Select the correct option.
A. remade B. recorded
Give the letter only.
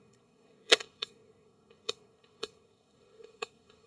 A